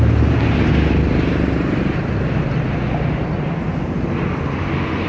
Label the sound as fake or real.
real